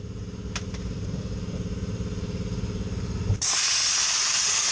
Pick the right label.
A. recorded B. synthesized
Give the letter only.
A